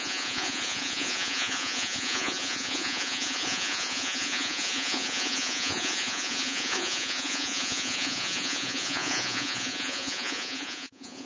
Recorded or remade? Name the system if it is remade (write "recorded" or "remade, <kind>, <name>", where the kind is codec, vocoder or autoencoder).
remade, vocoder, Vocos